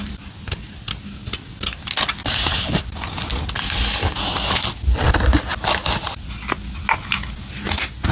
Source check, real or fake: real